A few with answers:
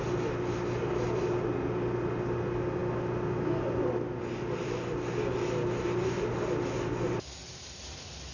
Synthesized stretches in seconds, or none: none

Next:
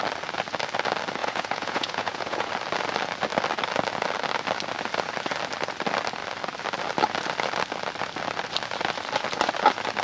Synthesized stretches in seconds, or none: 1.2-2.5

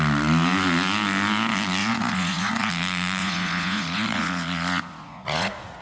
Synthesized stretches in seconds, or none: 1.8-2.7; 3.2-5.8